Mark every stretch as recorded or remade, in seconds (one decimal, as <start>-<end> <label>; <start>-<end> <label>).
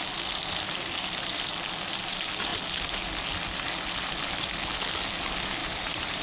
0.0-5.6 recorded; 5.6-6.2 remade